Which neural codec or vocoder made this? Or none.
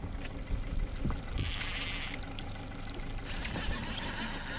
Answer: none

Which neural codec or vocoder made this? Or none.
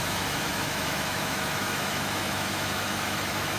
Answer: autoencoder, DAC-VAE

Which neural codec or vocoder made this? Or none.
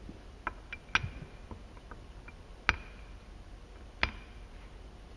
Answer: none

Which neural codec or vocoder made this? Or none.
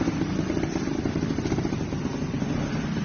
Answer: none